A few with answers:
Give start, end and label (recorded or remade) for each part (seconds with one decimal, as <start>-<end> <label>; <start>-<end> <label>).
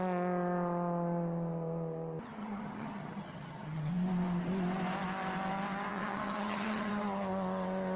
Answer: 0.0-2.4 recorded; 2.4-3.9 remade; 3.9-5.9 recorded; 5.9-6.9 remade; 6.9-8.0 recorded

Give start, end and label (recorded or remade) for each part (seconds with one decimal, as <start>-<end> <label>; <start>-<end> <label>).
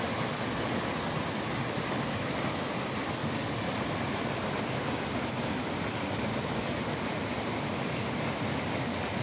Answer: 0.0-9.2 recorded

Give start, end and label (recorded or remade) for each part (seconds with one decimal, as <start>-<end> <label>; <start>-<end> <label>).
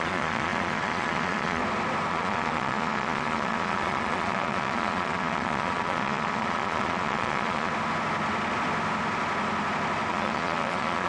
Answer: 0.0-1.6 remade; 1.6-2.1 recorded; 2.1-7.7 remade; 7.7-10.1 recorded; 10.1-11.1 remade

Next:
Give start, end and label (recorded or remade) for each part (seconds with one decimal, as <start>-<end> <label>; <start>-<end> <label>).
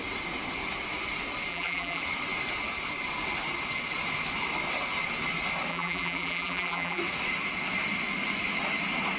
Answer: 0.0-1.5 recorded; 1.5-2.0 remade; 2.0-5.7 recorded; 5.7-7.0 remade; 7.0-9.2 recorded